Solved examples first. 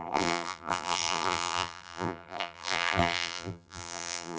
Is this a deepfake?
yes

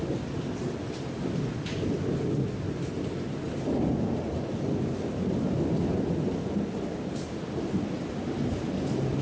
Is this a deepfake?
no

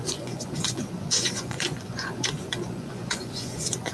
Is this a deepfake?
yes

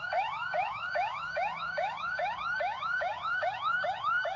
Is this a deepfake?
yes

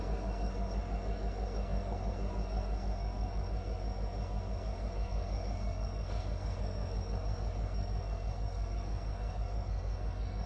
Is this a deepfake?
yes